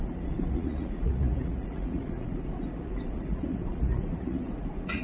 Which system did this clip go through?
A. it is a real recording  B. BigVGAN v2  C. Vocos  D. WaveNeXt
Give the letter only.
C